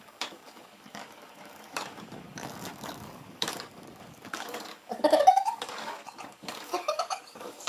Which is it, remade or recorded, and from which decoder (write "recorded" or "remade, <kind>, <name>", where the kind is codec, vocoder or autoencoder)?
remade, codec, DAC